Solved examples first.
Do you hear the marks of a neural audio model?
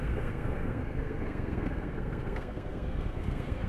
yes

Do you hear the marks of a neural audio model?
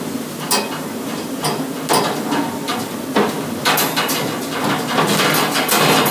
no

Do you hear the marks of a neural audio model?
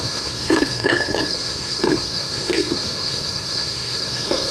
yes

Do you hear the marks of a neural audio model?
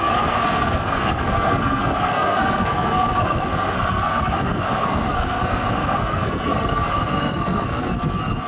yes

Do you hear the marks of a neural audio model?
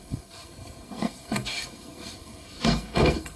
yes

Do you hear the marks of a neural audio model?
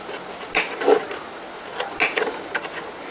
no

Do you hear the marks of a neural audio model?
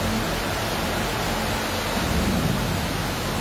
no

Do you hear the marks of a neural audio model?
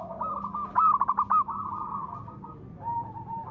no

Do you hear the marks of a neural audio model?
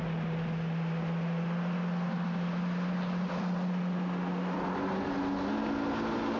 no